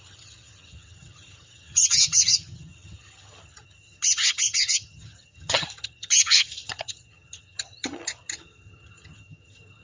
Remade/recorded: remade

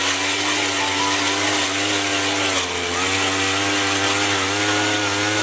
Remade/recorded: recorded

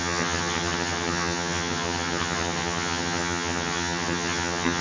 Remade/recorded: remade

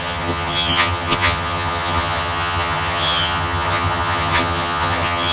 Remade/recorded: remade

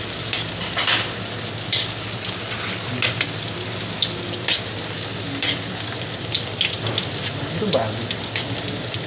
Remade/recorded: recorded